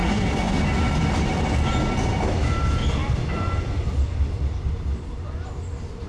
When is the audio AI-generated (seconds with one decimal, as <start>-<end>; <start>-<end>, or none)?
0.0-0.5